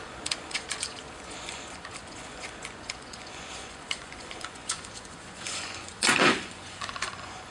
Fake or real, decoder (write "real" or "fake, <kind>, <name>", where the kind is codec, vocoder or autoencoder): fake, vocoder, Vocos